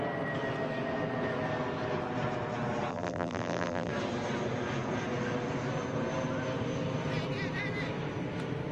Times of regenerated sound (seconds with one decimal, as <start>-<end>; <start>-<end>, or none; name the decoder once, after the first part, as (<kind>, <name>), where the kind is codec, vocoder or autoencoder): 2.9-3.9 (vocoder, BigVGAN v2)

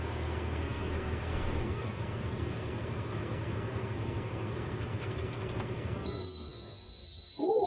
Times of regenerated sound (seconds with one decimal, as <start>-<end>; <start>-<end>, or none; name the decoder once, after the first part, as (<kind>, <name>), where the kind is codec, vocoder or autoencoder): 0.0-7.7 (codec, SNAC)

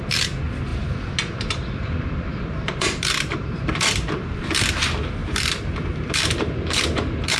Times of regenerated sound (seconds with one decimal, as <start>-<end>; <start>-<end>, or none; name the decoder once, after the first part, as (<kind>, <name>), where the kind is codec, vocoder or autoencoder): 2.3-4.3 (vocoder, BigVGAN v2); 5.2-7.4

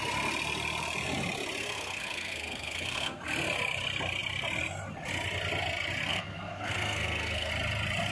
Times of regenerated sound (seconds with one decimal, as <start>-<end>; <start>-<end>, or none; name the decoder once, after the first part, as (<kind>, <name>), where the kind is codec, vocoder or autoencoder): 1.6-3.2 (codec, SNAC); 6.1-7.5

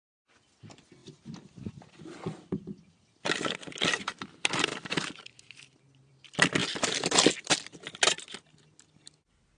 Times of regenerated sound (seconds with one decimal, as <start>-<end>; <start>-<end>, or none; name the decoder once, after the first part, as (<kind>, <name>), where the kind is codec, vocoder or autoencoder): none

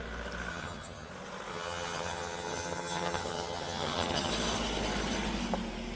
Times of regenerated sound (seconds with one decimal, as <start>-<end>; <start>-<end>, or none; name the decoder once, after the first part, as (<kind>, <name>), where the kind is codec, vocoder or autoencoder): 0.5-1.1 (vocoder, HiFi-GAN); 1.5-4.3

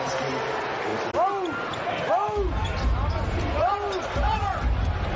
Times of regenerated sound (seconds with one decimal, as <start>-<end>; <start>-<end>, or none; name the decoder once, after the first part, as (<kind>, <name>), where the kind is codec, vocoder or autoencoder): none